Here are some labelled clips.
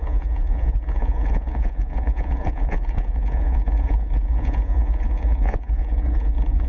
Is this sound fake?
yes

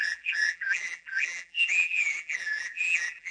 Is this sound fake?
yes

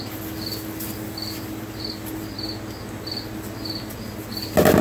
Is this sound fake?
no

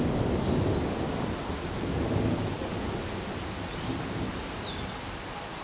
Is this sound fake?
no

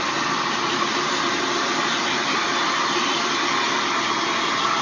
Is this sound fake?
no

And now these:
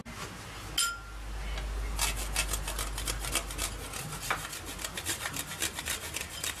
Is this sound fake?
no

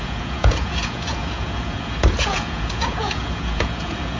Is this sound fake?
yes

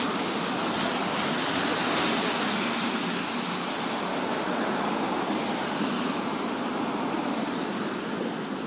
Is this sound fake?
no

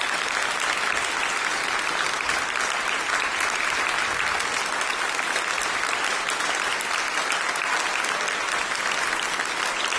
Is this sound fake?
no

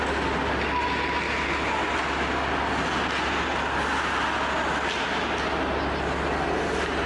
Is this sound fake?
no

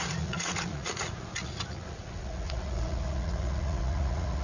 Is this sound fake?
yes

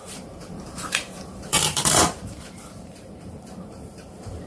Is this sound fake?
yes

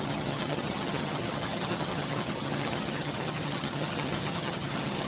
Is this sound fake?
yes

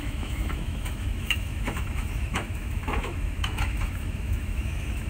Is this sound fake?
yes